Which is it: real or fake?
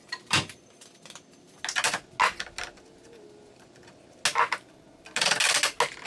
real